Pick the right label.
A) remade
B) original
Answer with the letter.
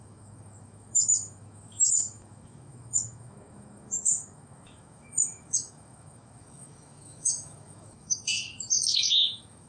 A